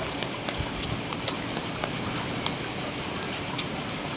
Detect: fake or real real